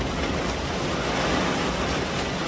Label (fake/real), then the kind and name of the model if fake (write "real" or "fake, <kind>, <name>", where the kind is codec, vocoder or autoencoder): real